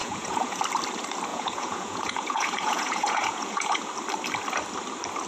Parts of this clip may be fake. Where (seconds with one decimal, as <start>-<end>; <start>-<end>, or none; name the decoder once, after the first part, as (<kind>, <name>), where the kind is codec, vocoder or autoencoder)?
0.0-0.6 (vocoder, Vocos); 1.3-3.9